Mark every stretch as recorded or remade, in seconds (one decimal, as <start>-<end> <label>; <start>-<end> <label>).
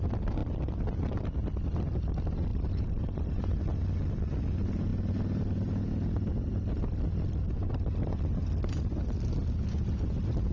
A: 0.0-2.5 recorded; 2.5-3.6 remade; 3.6-10.5 recorded